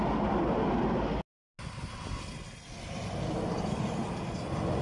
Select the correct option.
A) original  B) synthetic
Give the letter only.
A